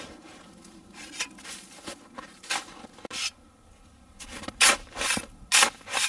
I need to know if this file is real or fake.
real